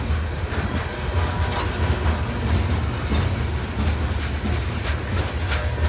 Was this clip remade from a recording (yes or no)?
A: no